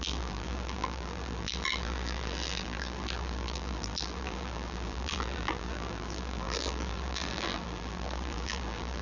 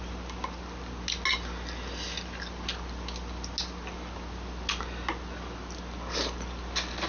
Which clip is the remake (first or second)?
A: first